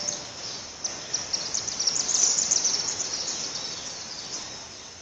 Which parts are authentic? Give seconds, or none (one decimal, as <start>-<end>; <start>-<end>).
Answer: 0.0-2.1; 2.9-5.0